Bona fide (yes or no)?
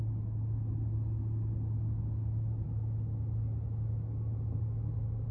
yes